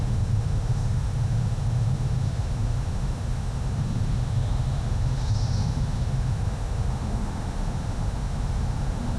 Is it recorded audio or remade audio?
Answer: remade